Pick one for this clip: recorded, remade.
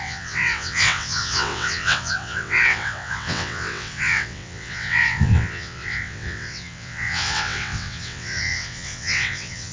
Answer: remade